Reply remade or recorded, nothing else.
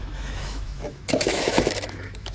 remade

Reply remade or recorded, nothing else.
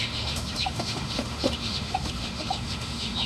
remade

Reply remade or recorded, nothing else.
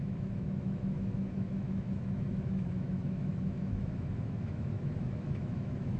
remade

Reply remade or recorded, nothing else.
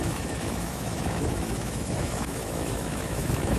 remade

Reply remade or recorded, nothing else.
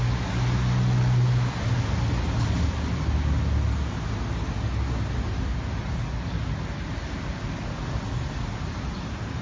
recorded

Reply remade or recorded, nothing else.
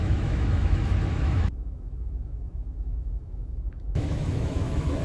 remade